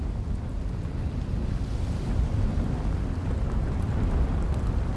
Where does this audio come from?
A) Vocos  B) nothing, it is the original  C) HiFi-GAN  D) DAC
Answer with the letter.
B